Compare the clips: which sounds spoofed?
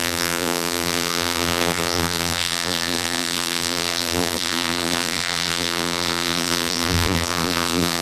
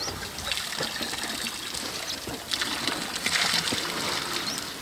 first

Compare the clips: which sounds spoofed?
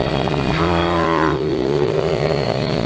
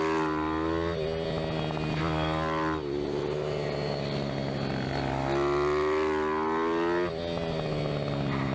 first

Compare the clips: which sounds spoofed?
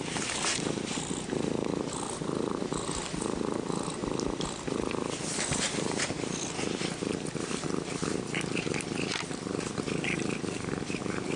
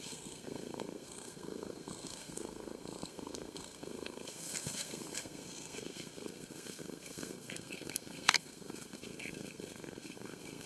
second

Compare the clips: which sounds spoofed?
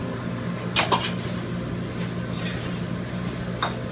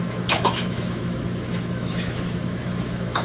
second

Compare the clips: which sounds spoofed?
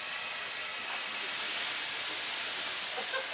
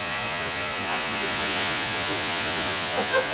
second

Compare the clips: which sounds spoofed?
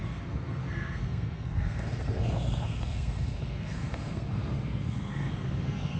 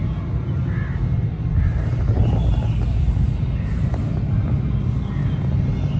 first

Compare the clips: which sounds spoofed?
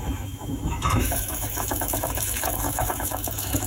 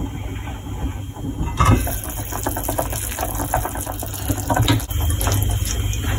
first